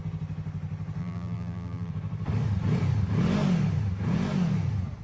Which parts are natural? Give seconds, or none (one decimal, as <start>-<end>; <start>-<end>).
0.0-1.0; 1.9-5.0